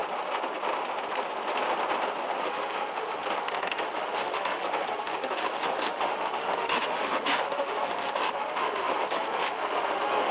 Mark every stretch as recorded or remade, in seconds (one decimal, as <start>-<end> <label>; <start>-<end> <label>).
0.0-2.4 recorded; 2.4-10.3 remade

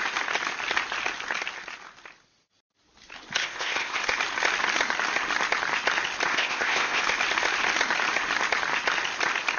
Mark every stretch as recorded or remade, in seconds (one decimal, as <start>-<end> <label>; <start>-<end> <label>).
0.0-3.4 recorded; 3.4-4.0 remade; 4.0-6.3 recorded; 6.3-7.0 remade; 7.0-9.6 recorded

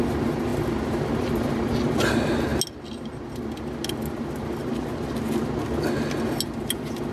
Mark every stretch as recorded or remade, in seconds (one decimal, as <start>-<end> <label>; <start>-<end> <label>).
0.0-7.1 recorded

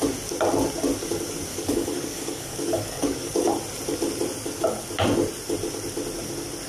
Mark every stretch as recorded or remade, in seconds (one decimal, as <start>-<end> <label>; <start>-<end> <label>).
0.0-1.5 recorded; 1.5-3.5 remade; 3.5-6.7 recorded

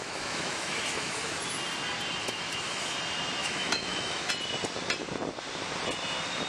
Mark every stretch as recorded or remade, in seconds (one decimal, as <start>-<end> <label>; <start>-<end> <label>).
0.0-1.3 remade; 1.3-2.2 recorded; 2.2-2.8 remade; 2.8-3.4 recorded; 3.4-4.3 remade; 4.3-6.5 recorded